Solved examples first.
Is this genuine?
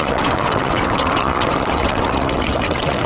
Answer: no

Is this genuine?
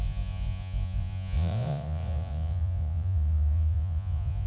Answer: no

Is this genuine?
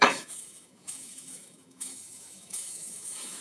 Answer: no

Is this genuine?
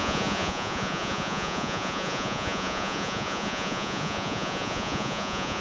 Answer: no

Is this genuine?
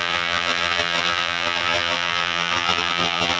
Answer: no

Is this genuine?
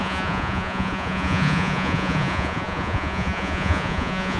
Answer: no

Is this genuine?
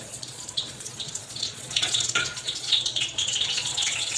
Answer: no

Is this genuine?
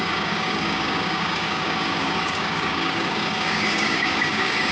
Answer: no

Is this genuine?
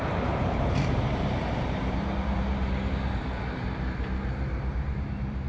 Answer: no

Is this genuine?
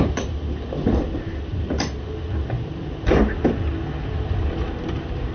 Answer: yes